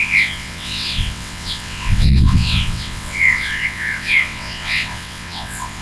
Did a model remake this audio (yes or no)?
yes